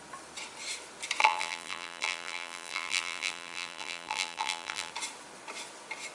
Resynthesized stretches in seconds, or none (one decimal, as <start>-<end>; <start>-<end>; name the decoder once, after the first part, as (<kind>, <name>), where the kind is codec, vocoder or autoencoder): 1.2-4.9 (vocoder, BigVGAN v2)